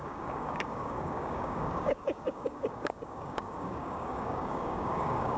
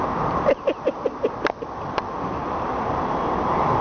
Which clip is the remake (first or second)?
first